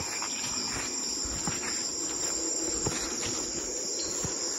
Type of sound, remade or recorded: recorded